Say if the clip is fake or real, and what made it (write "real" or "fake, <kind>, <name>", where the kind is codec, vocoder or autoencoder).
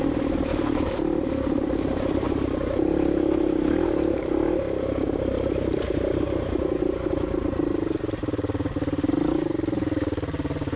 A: fake, vocoder, BigVGAN v2